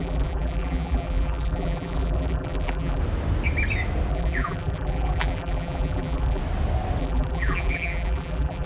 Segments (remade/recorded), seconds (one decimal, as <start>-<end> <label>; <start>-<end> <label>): 0.0-3.0 remade; 3.0-4.1 recorded; 4.1-6.4 remade; 6.4-7.0 recorded; 7.0-8.7 remade